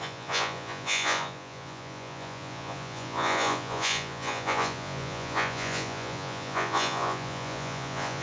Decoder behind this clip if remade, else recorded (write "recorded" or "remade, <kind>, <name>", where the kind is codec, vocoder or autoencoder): remade, vocoder, Vocos